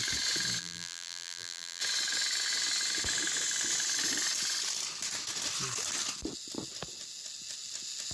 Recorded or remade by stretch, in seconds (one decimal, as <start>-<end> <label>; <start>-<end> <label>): 0.0-0.6 recorded; 0.6-1.8 remade; 1.8-8.1 recorded